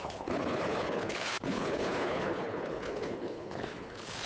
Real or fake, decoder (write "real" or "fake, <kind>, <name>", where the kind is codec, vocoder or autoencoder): fake, codec, HILCodec